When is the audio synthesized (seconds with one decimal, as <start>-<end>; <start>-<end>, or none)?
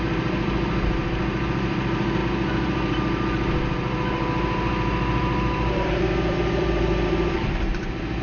0.0-8.2